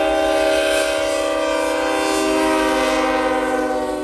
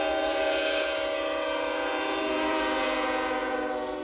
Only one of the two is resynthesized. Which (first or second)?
second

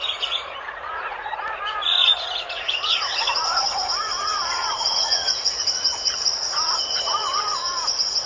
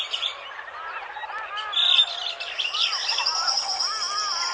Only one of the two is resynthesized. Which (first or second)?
first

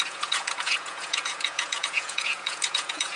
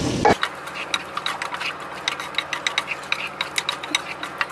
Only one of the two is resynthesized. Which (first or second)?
first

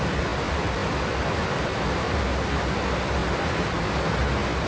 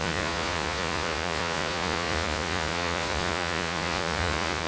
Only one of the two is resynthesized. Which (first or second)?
second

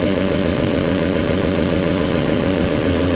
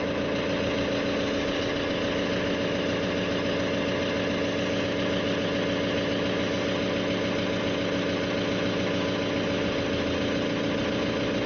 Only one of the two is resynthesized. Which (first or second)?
first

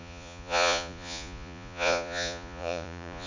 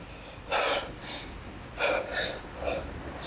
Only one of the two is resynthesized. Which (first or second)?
first